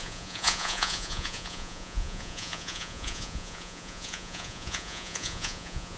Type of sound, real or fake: fake